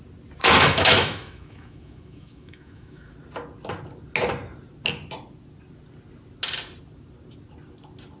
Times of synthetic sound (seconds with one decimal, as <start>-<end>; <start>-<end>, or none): 0.4-3.1